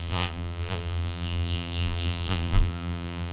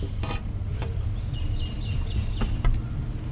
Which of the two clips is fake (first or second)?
first